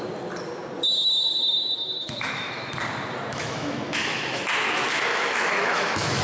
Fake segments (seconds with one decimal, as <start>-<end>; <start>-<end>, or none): 2.0-2.7; 3.3-4.4; 5.1-6.2